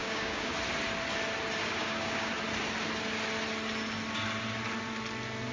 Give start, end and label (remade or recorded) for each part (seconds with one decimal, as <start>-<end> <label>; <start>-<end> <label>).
0.0-0.5 remade; 0.5-1.6 recorded; 1.6-2.3 remade; 2.3-5.5 recorded